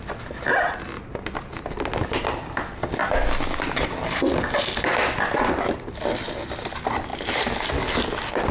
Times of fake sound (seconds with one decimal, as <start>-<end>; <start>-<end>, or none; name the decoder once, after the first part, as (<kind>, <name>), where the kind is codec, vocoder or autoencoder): none